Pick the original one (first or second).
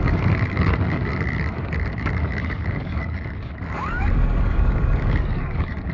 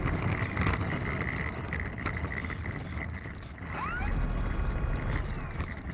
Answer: second